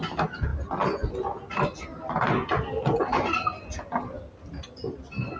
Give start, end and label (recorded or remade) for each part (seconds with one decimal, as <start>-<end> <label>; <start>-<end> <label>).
0.0-5.4 recorded